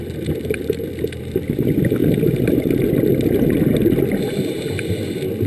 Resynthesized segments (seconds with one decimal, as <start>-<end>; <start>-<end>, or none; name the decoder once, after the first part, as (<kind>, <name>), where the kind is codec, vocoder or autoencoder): 0.0-2.0 (vocoder, BigVGAN v2)